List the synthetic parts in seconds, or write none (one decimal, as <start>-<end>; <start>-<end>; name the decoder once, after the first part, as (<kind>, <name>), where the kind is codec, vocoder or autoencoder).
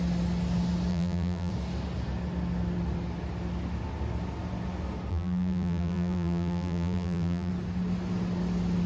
0.9-1.5 (vocoder, BigVGAN v2); 5.1-7.5